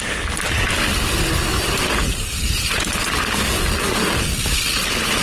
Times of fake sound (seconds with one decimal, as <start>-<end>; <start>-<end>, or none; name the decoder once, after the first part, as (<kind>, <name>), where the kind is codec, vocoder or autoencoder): 1.5-3.6 (vocoder, BigVGAN v2)